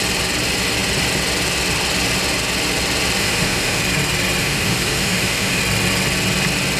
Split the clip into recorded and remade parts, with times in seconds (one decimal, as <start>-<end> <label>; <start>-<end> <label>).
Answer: 0.0-3.2 recorded; 3.2-3.8 remade; 3.8-4.4 recorded; 4.4-5.6 remade; 5.6-6.8 recorded